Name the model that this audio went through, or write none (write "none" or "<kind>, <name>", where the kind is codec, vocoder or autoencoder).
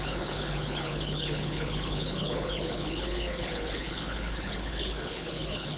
codec, HILCodec